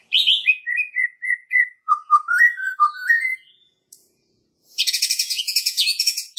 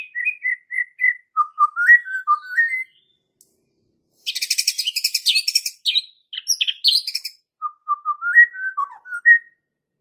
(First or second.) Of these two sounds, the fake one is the first